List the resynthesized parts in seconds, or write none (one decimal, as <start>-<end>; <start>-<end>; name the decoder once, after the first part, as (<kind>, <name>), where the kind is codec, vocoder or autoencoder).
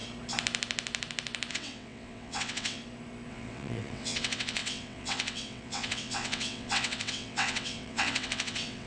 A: 1.5-2.8 (vocoder, WaveNeXt); 3.3-8.9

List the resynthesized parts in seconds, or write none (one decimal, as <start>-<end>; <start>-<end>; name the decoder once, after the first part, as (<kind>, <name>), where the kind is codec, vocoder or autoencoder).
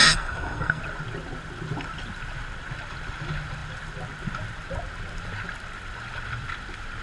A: 0.0-0.8 (codec, SNAC)